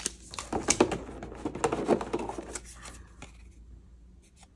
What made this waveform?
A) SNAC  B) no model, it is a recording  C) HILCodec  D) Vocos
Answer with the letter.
B